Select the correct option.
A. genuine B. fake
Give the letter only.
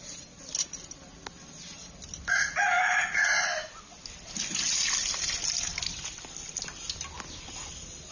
A